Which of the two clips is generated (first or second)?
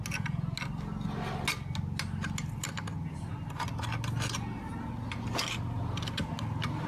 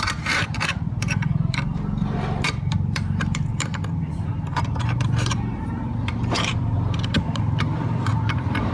second